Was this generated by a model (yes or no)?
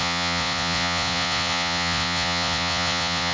yes